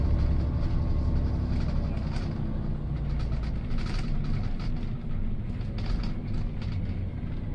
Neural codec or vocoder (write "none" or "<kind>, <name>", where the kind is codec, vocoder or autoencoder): none